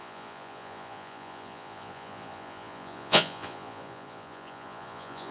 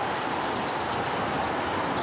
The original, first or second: second